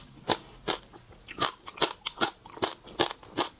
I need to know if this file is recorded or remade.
recorded